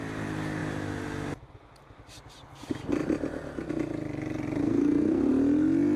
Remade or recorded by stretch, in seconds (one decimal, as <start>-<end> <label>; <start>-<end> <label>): 0.0-4.6 recorded; 4.6-5.3 remade; 5.3-6.0 recorded